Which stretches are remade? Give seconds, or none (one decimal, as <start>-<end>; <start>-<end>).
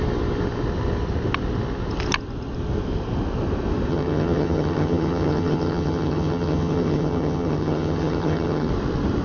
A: 3.9-8.7